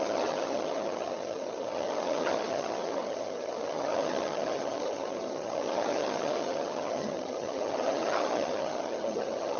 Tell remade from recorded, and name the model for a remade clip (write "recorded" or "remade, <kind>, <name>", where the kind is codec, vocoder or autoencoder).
remade, vocoder, HiFi-GAN